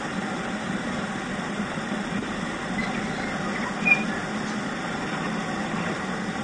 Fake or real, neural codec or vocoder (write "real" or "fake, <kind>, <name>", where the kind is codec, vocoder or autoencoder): real